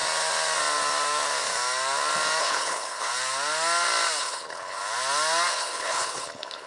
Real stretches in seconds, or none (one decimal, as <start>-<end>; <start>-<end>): 0.0-2.4; 3.1-4.2; 4.8-5.5